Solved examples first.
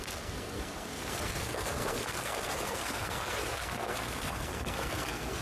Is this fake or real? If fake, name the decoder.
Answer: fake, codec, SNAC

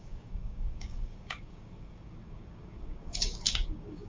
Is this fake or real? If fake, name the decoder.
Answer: fake, codec, DAC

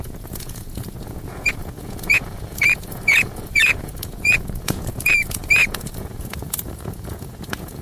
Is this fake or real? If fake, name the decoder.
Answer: fake, vocoder, Vocos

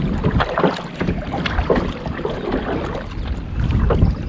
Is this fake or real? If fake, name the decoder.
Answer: real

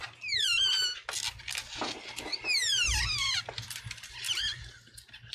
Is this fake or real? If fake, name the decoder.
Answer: real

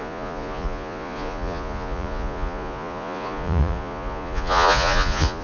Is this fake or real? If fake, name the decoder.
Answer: fake, vocoder, Vocos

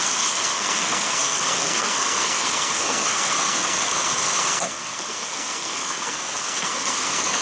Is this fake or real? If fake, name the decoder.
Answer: fake, codec, SNAC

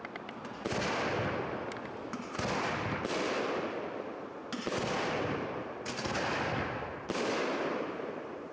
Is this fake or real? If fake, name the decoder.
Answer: real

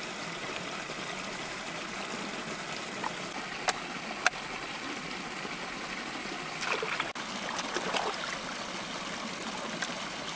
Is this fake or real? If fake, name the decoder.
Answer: real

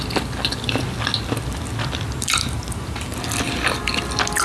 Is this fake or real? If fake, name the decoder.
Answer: real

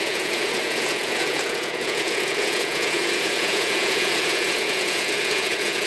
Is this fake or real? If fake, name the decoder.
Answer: fake, vocoder, Vocos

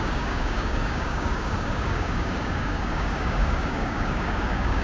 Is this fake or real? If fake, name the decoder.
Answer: fake, codec, DAC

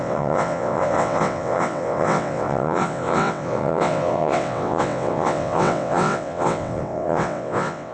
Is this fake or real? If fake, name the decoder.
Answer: fake, vocoder, WaveNeXt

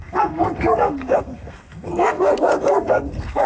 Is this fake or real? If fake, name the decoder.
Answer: fake, codec, SNAC